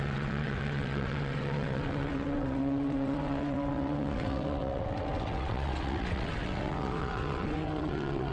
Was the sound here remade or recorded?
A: remade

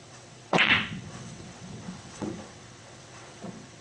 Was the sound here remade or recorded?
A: remade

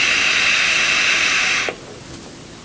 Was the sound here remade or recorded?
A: recorded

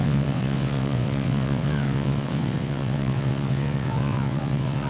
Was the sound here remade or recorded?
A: remade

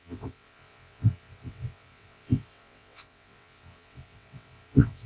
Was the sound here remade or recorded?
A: remade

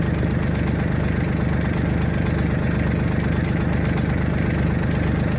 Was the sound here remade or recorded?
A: recorded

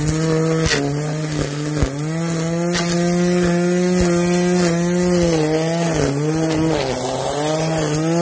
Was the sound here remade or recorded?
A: recorded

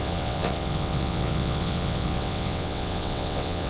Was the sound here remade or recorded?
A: remade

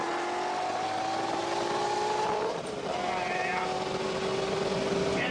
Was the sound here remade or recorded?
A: recorded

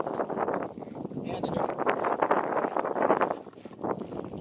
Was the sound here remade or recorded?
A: recorded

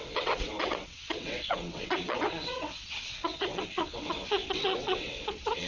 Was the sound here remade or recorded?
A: remade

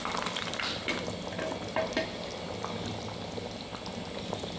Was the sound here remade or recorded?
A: recorded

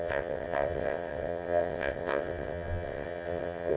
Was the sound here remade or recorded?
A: remade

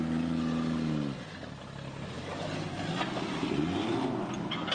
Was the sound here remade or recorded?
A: recorded